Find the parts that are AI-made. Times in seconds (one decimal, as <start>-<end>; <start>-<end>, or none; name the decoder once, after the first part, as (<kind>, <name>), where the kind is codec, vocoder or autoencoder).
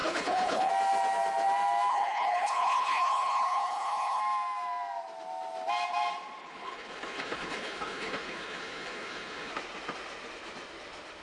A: 0.0-0.7 (codec, HILCodec); 1.9-4.2; 6.4-9.5